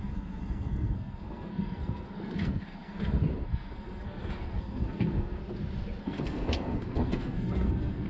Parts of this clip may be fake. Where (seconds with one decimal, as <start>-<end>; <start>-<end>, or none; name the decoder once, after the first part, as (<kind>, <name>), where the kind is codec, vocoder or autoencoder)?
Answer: 0.0-5.4 (codec, SNAC); 6.0-8.1